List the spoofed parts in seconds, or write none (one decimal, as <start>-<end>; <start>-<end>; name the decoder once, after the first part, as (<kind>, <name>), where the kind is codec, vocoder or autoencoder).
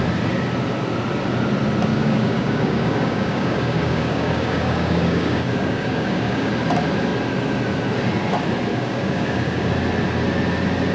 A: 1.9-6.5 (codec, DAC); 8.7-9.7